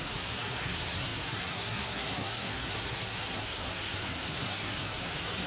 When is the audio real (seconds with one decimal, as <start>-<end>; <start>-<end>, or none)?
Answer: none